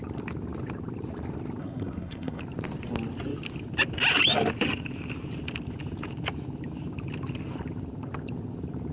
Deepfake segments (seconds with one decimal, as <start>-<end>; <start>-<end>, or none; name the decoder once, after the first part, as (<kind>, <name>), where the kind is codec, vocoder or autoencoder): 1.6-2.4 (codec, SNAC)